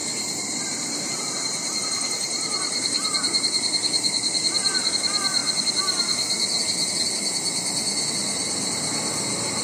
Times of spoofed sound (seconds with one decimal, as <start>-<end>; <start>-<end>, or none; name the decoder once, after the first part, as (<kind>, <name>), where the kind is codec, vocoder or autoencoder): 0.0-4.9 (vocoder, BigVGAN v2)